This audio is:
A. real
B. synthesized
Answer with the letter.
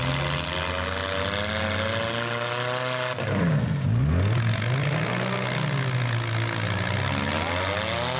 A